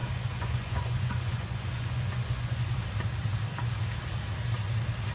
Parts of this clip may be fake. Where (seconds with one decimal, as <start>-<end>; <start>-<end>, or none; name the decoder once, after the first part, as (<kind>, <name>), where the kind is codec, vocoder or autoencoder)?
0.0-2.7 (vocoder, Vocos)